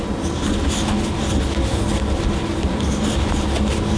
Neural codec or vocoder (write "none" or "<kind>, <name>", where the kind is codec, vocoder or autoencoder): none